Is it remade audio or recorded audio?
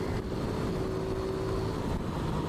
recorded